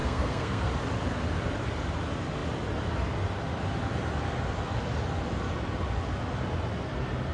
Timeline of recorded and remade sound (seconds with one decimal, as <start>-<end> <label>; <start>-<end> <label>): 0.0-0.7 remade; 0.7-7.3 recorded